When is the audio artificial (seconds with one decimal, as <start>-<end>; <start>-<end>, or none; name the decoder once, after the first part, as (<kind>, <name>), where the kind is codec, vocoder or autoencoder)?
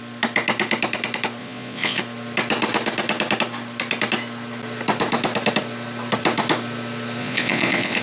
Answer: 1.4-2.0 (vocoder, Vocos); 7.2-8.0